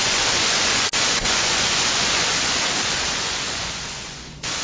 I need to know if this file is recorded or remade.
remade